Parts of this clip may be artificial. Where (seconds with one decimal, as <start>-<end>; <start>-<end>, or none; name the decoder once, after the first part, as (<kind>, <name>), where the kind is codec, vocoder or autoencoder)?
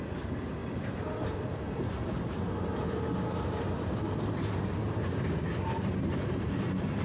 0.0-7.0 (vocoder, BigVGAN v2)